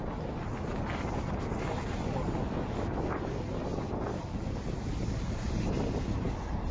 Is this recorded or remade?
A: recorded